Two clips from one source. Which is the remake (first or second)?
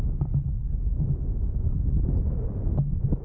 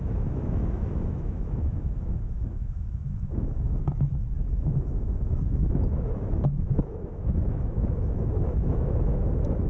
second